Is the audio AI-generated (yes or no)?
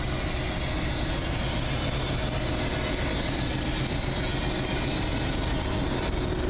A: no